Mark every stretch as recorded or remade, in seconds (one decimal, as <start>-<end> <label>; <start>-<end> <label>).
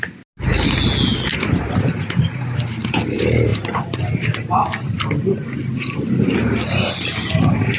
0.0-7.8 recorded